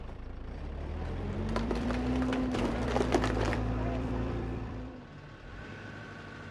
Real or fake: fake